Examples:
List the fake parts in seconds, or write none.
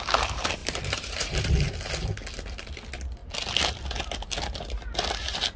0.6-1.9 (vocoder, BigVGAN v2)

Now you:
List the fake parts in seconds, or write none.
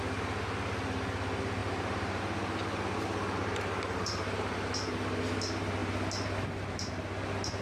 1.6-2.2 (vocoder, BigVGAN v2); 3.4-4.9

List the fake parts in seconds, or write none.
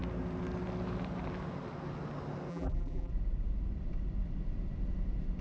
2.5-3.1 (vocoder, BigVGAN v2)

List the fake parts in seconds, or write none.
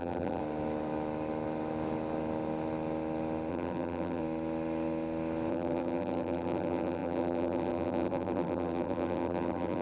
0.0-0.4 (vocoder, BigVGAN v2); 3.5-4.2; 5.5-9.8